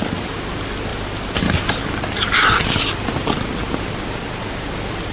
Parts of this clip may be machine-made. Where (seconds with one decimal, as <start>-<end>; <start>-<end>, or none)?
none